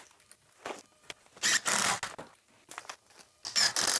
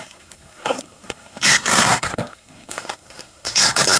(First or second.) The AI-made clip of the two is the second